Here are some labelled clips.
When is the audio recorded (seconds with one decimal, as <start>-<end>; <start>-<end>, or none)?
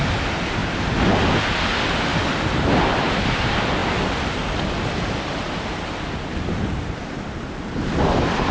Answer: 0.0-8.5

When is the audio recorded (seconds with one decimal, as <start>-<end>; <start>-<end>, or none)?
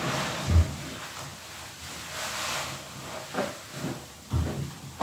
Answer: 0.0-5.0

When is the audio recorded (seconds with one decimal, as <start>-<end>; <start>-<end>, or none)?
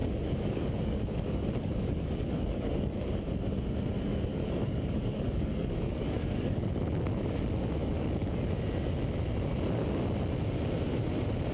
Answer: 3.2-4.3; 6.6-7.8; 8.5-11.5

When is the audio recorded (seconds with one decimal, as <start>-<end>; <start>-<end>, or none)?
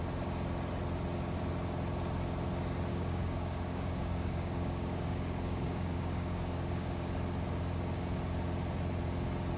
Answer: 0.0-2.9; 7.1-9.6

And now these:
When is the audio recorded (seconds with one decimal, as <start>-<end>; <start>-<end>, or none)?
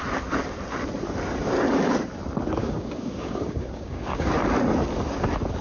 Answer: 0.0-2.6; 4.3-5.6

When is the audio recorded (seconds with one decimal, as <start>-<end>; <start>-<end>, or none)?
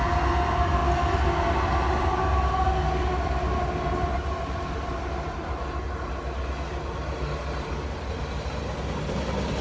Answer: 0.0-9.6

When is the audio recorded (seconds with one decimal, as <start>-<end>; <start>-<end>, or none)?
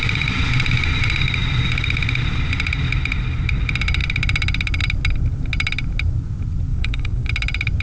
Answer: 0.0-6.7; 7.3-7.8